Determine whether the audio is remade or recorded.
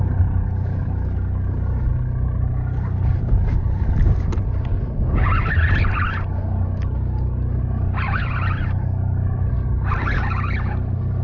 recorded